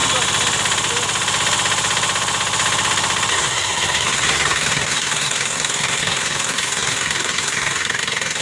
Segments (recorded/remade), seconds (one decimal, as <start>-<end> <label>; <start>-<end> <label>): 0.0-3.3 recorded; 3.3-8.4 remade